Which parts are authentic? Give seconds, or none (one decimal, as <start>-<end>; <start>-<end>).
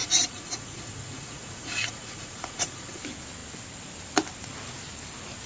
3.0-5.5